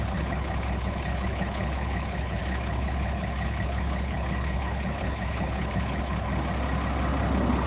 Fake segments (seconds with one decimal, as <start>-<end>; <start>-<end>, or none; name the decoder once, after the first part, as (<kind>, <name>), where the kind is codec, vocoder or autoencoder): 0.0-6.3 (codec, HILCodec)